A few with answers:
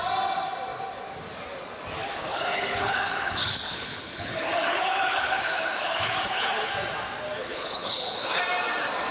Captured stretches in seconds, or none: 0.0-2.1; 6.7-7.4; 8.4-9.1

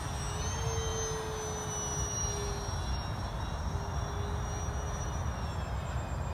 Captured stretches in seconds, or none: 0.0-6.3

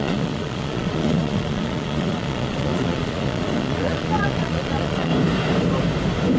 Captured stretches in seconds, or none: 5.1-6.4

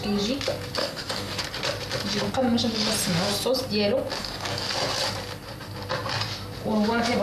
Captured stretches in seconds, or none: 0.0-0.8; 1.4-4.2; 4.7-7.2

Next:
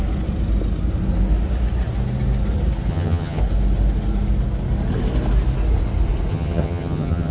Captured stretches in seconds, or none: 0.0-2.9; 3.4-6.3

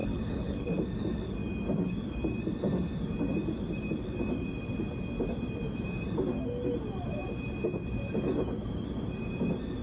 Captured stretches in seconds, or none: 0.7-9.8